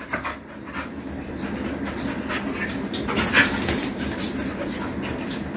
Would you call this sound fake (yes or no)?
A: no